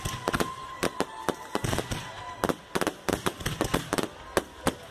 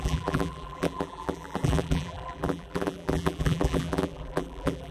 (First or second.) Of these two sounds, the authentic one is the first